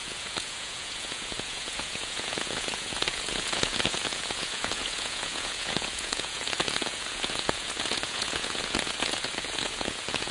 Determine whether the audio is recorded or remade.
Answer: remade